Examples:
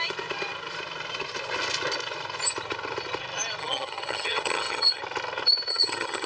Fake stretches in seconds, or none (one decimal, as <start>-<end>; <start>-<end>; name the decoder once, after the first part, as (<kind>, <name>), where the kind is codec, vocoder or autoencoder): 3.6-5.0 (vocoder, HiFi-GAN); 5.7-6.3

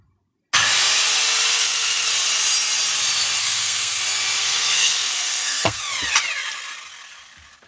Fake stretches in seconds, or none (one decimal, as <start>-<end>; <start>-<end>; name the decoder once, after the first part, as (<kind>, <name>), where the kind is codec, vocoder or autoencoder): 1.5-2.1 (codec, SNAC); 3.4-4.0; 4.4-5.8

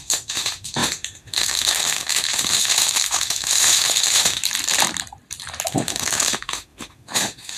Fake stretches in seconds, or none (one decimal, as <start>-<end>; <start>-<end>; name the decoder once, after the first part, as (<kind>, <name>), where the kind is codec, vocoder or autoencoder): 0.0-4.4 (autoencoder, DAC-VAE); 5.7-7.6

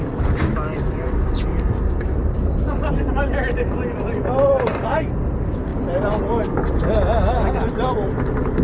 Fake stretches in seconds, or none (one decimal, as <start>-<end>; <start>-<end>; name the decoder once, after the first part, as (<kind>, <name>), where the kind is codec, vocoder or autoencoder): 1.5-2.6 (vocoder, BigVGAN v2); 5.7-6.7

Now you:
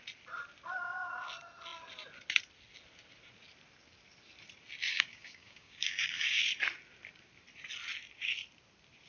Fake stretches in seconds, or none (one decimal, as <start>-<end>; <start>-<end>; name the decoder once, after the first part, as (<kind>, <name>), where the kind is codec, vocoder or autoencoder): 4.9-6.4 (codec, DAC)

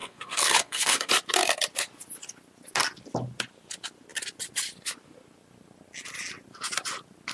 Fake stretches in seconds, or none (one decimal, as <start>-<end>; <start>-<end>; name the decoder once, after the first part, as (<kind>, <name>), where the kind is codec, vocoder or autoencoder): 0.0-1.1 (codec, SNAC)

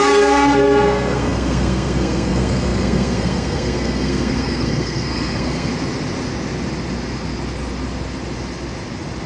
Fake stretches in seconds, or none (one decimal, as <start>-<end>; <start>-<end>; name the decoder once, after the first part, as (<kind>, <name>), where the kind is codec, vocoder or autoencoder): 0.0-5.7 (codec, SNAC)

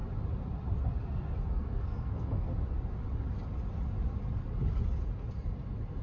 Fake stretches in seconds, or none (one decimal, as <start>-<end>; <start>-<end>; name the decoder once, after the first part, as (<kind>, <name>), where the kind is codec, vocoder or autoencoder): 1.5-2.5 (codec, SNAC)